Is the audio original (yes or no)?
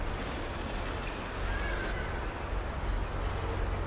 yes